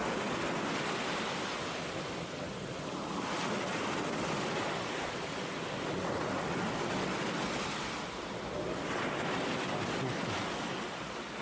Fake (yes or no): no